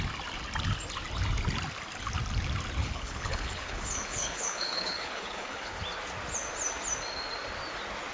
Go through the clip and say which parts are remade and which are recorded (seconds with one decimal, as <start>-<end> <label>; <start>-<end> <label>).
0.0-2.8 recorded; 2.8-5.8 remade; 5.8-8.1 recorded